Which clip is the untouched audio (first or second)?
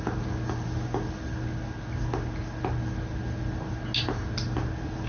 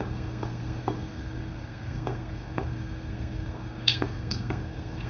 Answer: first